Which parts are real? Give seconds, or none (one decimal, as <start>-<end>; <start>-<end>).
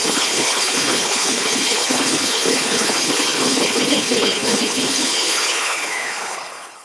none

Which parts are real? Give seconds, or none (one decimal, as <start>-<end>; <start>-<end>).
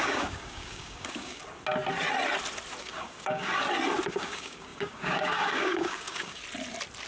1.4-2.8; 3.5-4.1; 6.4-7.1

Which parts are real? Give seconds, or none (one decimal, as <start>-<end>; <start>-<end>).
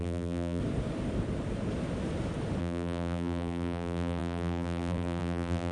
0.6-2.6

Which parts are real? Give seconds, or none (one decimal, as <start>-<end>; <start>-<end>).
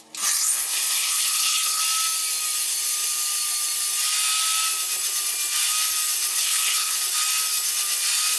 0.0-0.4; 1.8-6.3; 7.0-8.4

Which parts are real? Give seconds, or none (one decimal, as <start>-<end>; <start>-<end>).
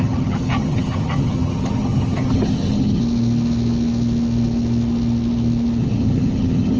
3.0-5.8